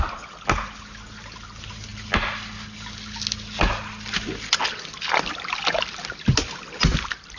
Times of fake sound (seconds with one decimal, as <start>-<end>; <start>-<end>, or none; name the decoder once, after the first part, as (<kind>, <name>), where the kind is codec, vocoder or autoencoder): none